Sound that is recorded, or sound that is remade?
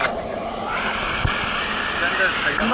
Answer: recorded